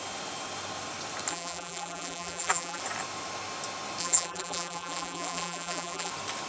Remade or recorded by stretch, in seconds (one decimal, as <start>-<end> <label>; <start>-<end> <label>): 0.0-1.3 recorded; 1.3-2.8 remade; 2.8-4.0 recorded; 4.0-6.1 remade; 6.1-6.5 recorded